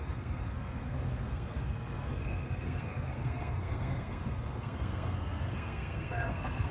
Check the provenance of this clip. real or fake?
fake